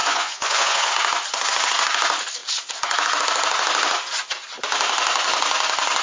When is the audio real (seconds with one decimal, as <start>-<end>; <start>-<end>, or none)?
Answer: 0.9-6.0